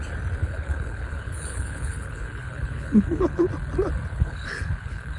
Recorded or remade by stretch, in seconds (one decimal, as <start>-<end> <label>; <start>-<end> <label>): 0.0-0.4 recorded; 0.4-3.5 remade; 3.5-4.1 recorded; 4.1-5.2 remade